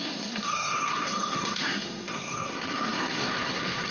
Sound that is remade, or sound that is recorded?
remade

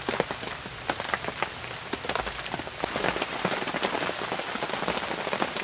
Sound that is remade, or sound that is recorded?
recorded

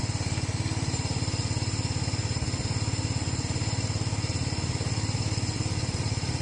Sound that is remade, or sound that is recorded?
recorded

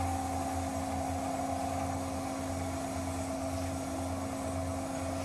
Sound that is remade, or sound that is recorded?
recorded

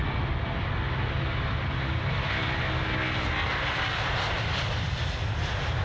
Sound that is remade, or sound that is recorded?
recorded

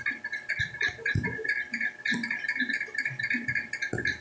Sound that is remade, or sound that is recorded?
recorded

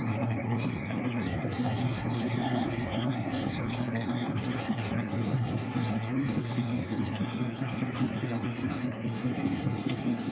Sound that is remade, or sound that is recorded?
remade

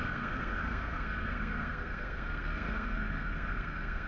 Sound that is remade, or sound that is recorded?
remade